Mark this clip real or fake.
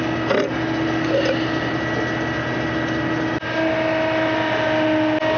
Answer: real